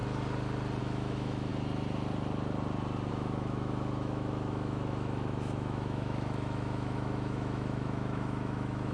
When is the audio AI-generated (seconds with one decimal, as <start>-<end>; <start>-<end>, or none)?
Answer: 0.8-1.5; 3.1-8.9